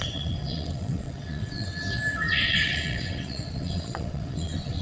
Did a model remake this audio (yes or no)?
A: yes